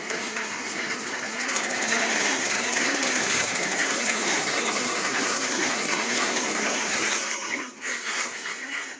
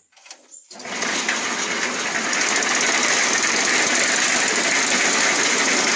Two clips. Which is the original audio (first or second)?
second